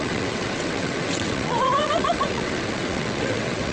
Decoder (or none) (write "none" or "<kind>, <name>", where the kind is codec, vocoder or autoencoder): vocoder, WaveNeXt